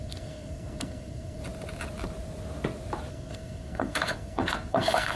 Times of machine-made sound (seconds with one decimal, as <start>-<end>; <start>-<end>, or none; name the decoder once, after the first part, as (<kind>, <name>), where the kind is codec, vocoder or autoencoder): 0.0-1.4 (codec, SNAC); 3.1-5.2